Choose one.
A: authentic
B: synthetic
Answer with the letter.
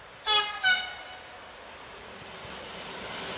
A